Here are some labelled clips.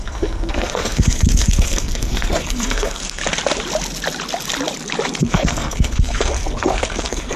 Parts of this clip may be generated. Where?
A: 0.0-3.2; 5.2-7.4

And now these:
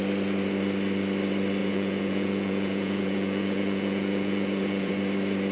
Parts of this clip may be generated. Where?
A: 1.6-4.9

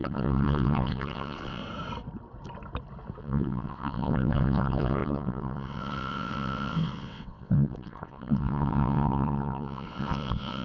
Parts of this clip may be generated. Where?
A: 0.0-1.6; 3.2-10.6

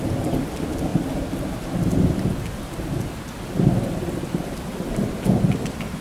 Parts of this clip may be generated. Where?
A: none

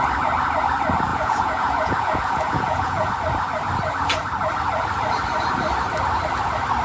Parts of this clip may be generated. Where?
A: 1.1-3.1

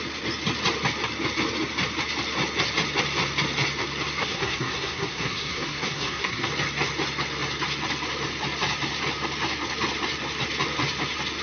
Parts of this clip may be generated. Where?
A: 4.2-6.5

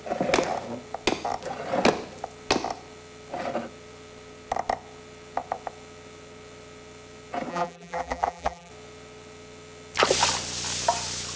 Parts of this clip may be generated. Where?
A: 7.5-8.7